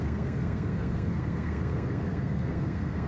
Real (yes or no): no